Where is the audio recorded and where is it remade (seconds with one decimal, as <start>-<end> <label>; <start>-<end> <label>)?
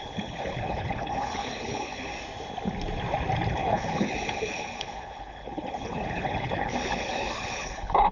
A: 0.0-2.1 remade; 2.1-3.5 recorded; 3.5-8.1 remade